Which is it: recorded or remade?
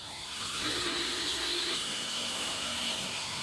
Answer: remade